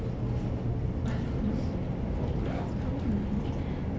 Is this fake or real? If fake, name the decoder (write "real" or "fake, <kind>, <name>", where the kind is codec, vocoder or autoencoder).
real